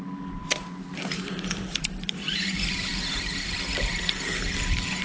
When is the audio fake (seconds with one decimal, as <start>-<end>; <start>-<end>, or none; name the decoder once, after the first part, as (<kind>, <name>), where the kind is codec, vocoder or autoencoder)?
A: 0.4-3.4 (vocoder, BigVGAN v2)